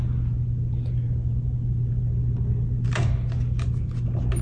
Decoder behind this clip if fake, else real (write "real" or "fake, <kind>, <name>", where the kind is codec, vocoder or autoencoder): real